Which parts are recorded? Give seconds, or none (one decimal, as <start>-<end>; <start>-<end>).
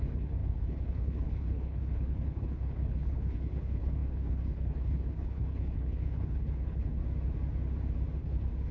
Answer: 7.0-8.2